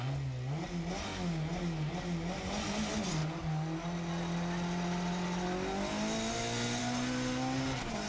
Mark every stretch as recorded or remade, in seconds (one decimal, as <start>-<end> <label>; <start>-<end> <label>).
0.0-8.1 recorded